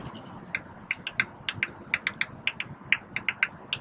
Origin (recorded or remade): recorded